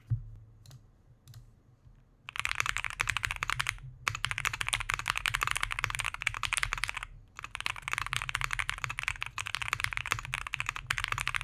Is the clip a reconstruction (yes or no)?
no